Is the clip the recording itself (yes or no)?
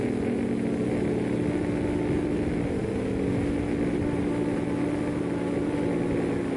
yes